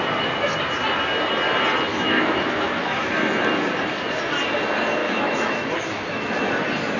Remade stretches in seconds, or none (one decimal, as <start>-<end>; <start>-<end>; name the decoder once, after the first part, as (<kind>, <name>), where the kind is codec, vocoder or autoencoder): 1.9-3.1 (autoencoder, DAC-VAE); 5.0-6.5